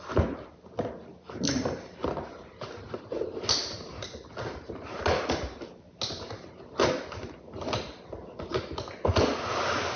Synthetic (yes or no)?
no